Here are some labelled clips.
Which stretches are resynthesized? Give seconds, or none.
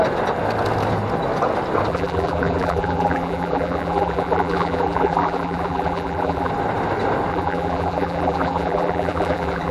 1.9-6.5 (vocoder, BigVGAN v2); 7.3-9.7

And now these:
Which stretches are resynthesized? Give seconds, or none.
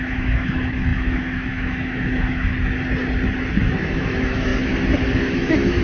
0.0-2.5 (autoencoder, DAC-VAE); 3.9-4.5; 5.3-5.8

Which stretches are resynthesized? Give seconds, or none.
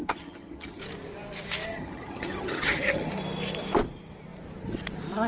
0.0-0.8 (vocoder, HiFi-GAN); 1.7-3.1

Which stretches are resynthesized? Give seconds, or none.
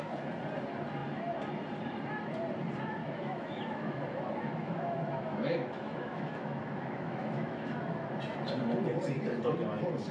3.0-8.1 (autoencoder, DAC-VAE)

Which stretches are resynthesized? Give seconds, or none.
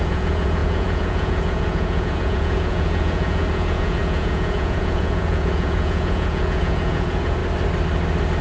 0.0-7.4 (vocoder, Vocos)